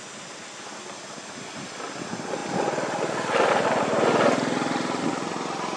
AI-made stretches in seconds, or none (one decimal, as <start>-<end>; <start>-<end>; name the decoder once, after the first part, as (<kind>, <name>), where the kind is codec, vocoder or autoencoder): none